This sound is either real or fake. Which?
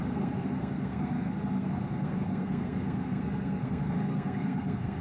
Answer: fake